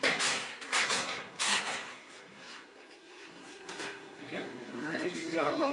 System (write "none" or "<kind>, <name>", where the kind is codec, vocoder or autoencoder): codec, SNAC